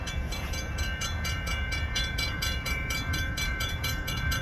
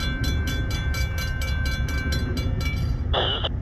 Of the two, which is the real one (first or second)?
second